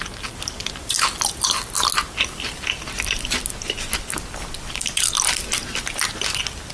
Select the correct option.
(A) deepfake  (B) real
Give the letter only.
B